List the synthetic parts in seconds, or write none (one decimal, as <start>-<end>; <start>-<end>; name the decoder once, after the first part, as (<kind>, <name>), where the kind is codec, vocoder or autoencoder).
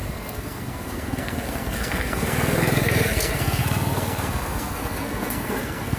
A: 0.0-6.0 (codec, SNAC)